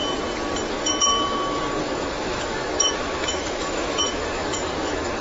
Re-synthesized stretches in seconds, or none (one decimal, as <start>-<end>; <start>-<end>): 0.7-5.2